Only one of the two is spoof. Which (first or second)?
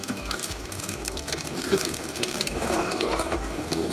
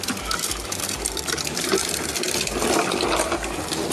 first